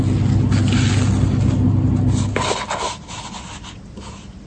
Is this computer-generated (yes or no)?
no